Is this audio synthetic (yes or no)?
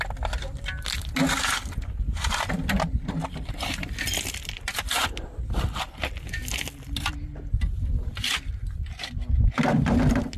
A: no